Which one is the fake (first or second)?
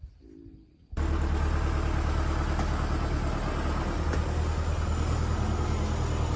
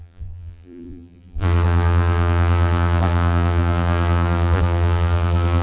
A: second